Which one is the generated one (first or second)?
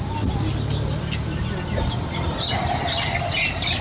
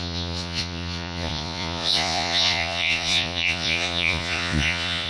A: second